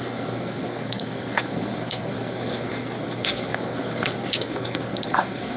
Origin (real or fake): fake